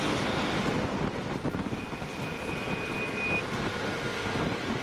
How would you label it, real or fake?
real